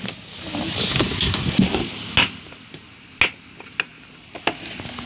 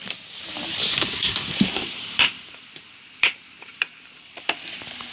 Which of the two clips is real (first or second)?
first